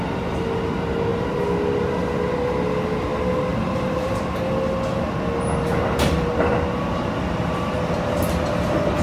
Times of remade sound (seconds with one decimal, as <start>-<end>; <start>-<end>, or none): 3.5-4.4; 5.7-6.5